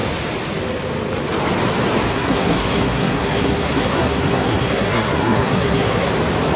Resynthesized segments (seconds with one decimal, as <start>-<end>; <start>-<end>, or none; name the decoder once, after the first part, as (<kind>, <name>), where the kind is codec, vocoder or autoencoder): 2.1-6.1 (codec, SNAC)